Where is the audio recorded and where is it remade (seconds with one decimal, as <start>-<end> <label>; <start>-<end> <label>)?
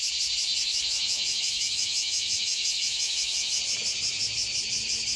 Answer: 0.0-0.5 recorded; 0.5-3.6 remade; 3.6-5.2 recorded